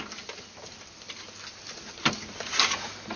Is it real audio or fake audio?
real